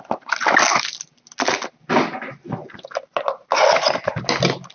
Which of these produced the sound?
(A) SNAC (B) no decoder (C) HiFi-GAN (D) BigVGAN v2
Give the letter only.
B